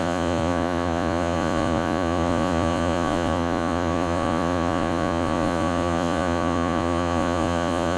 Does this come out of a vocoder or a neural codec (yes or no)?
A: yes